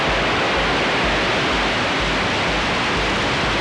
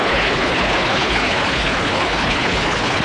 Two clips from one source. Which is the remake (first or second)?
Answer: second